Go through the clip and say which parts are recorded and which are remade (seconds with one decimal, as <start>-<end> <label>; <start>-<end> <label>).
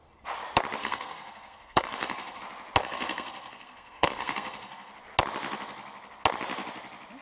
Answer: 0.0-0.8 recorded; 0.8-2.4 remade; 2.4-2.8 recorded; 2.8-4.9 remade; 4.9-7.2 recorded